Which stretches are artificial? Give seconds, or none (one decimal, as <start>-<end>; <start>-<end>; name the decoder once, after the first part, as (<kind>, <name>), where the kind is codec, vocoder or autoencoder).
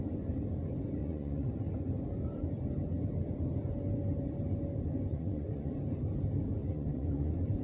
1.0-1.5 (vocoder, Vocos); 5.1-5.7; 6.6-7.6